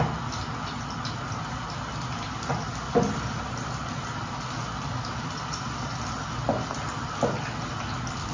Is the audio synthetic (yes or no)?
no